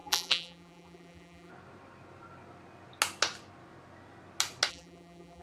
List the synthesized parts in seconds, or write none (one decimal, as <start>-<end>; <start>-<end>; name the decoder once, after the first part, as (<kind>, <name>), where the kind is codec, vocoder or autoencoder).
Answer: 0.0-1.5 (vocoder, BigVGAN v2); 4.7-5.4